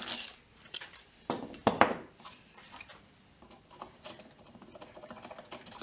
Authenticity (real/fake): fake